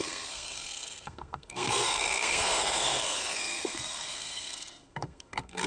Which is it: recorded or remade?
remade